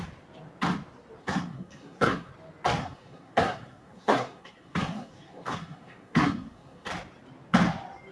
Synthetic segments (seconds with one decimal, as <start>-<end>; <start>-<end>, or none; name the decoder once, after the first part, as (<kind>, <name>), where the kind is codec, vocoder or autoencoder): 1.2-2.3 (codec, SNAC); 2.8-6.9

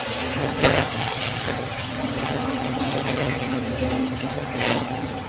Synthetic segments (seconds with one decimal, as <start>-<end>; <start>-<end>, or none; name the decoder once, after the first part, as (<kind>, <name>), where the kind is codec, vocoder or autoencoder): 0.4-3.6 (vocoder, HiFi-GAN); 4.0-5.3

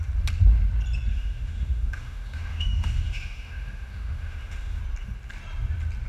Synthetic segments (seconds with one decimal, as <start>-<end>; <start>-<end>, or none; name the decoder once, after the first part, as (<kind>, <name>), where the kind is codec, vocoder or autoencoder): 1.1-4.8 (autoencoder, DAC-VAE)

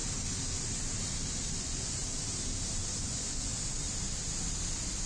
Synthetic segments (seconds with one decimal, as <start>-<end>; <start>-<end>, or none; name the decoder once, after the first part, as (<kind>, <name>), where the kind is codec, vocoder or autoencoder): 1.6-2.0 (vocoder, Vocos); 3.0-3.5

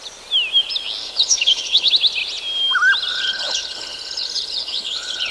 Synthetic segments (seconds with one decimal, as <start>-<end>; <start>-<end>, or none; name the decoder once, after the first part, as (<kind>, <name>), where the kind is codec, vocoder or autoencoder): 1.0-1.9 (codec, HILCodec); 3.1-5.3